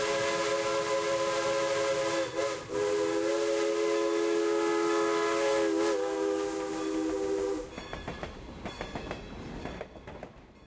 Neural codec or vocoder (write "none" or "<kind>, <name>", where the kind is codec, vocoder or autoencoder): none